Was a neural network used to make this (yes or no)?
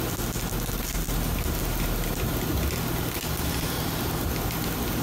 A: no